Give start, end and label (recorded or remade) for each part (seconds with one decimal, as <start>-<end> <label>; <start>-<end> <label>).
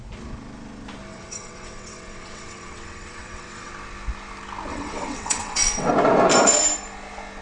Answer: 0.0-1.1 recorded; 1.1-3.7 remade; 3.7-4.7 recorded; 4.7-5.9 remade; 5.9-7.4 recorded